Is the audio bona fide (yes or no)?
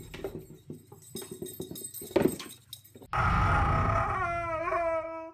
yes